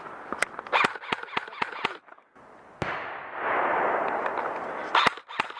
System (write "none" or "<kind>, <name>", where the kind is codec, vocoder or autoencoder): none